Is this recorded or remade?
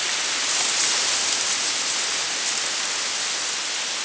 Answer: recorded